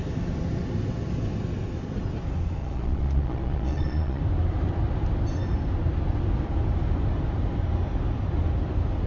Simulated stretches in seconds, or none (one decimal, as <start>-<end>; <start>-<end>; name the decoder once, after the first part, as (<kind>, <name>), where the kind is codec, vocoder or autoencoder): 2.6-4.2 (vocoder, Vocos)